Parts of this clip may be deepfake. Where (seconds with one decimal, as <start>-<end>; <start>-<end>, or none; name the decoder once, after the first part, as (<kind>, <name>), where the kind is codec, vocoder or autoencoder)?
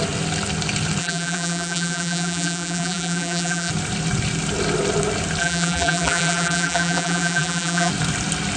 1.0-3.7 (vocoder, BigVGAN v2); 5.4-7.9